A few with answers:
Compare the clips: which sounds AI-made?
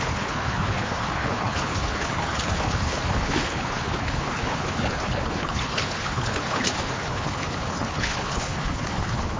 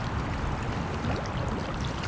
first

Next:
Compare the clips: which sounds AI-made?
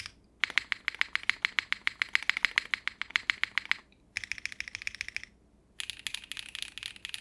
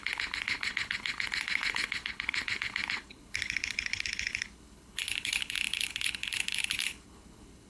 second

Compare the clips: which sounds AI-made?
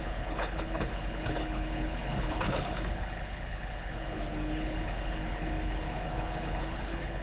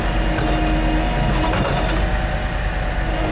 first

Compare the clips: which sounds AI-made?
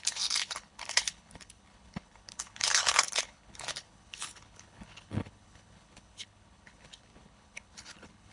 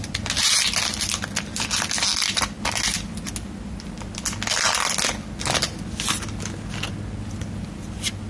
first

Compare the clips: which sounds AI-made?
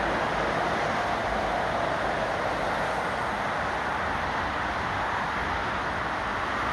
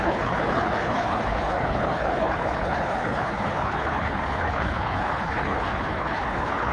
second